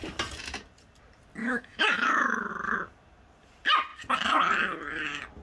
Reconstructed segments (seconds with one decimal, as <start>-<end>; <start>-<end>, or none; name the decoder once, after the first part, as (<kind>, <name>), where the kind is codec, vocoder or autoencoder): 1.4-2.5 (autoencoder, DAC-VAE)